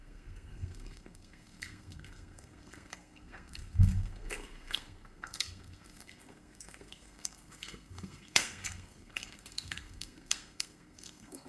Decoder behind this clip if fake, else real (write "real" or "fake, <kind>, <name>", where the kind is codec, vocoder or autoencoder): fake, codec, SNAC